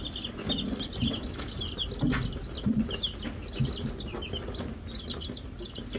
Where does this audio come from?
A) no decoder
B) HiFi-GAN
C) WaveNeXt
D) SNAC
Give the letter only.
A